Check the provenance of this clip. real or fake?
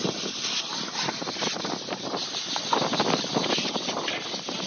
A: real